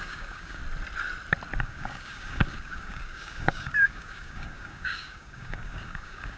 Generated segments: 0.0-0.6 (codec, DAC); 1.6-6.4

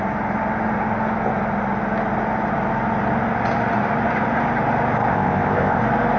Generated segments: 5.1-5.8 (codec, ZipCodec)

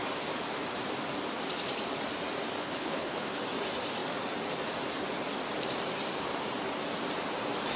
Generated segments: 2.6-3.4 (codec, HILCodec)

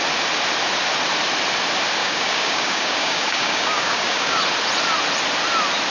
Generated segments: 2.0-4.4 (codec, DAC)

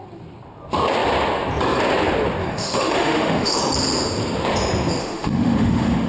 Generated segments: 2.4-3.6 (autoencoder, DAC-VAE); 5.0-6.1